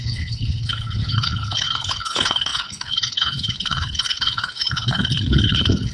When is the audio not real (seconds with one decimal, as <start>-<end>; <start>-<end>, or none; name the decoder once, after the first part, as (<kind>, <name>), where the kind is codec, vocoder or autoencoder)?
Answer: 0.0-5.9 (codec, HILCodec)